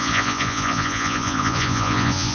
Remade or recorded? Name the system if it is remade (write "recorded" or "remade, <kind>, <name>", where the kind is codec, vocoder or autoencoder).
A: remade, vocoder, Vocos